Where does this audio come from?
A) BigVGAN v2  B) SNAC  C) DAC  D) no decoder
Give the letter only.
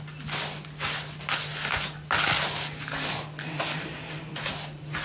D